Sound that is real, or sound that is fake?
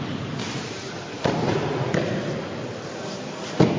real